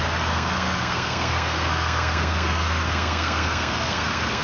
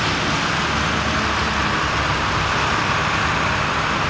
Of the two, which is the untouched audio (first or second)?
second